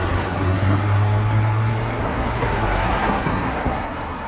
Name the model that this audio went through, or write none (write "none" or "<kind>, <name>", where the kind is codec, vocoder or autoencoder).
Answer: codec, SNAC